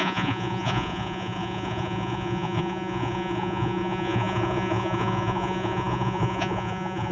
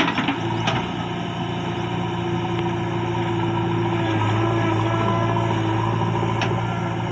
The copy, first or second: first